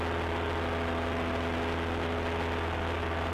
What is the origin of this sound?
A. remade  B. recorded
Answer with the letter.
B